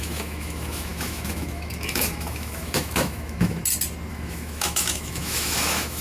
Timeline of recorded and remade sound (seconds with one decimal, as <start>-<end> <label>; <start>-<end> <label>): 0.0-3.6 remade; 3.6-4.1 recorded; 4.1-6.0 remade